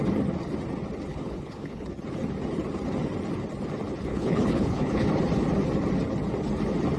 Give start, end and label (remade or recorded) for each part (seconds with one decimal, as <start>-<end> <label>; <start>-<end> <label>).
0.0-1.1 recorded; 1.1-1.9 remade; 1.9-4.1 recorded; 4.1-5.2 remade; 5.2-7.0 recorded